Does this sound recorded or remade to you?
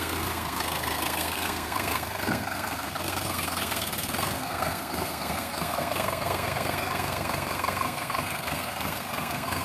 remade